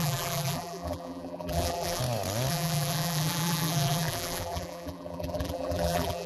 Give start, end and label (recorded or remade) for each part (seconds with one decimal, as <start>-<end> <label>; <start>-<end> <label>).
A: 0.0-2.0 remade; 2.0-2.5 recorded; 2.5-6.3 remade